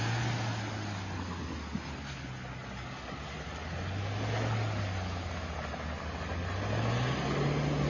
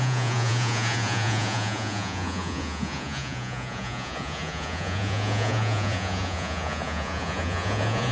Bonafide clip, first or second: first